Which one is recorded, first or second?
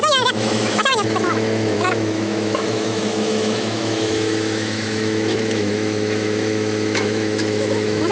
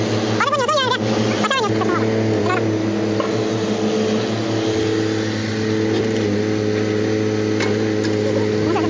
second